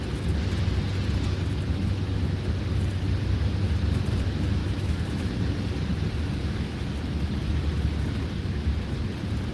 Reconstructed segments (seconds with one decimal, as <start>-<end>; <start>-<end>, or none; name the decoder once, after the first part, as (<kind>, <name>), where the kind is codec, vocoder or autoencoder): 4.6-5.3 (autoencoder, DAC-VAE); 6.4-6.9